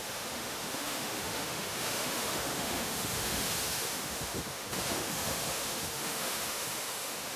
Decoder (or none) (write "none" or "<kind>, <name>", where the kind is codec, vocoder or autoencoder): autoencoder, DAC-VAE